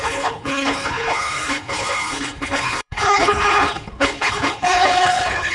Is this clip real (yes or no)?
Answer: no